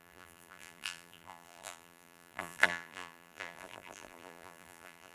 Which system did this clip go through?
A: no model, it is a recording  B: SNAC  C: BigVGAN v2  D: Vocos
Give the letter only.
C